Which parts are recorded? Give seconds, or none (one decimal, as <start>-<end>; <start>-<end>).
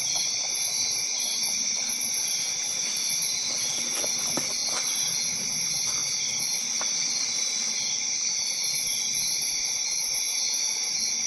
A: 0.0-6.0; 10.2-11.3